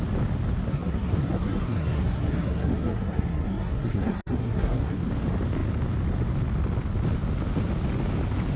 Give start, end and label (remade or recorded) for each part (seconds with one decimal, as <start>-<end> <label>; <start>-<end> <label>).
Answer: 0.0-0.7 recorded; 0.7-5.0 remade; 5.0-8.6 recorded